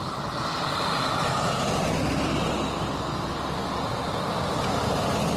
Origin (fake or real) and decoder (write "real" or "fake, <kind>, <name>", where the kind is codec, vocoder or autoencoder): real